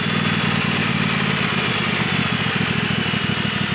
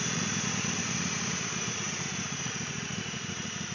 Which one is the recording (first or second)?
first